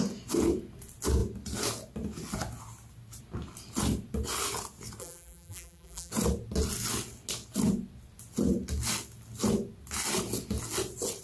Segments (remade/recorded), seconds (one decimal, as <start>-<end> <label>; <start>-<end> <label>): 0.0-5.0 recorded; 5.0-6.1 remade; 6.1-11.2 recorded